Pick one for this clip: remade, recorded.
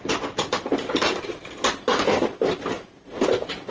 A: remade